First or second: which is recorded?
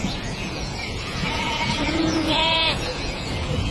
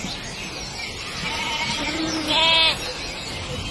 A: second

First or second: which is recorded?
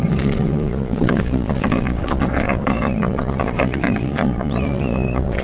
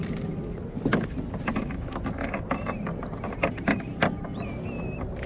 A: second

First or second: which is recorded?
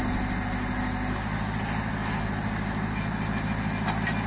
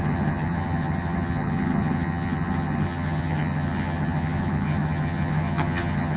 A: first